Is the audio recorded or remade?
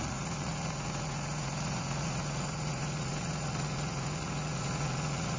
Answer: remade